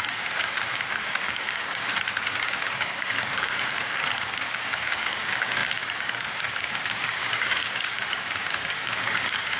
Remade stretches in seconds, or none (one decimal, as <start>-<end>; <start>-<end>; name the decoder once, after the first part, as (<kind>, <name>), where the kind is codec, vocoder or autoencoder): 0.0-1.8 (codec, DAC); 2.3-9.6